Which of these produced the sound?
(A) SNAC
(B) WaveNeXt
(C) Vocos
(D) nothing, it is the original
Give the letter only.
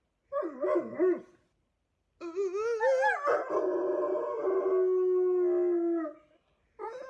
D